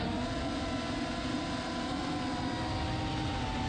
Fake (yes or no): no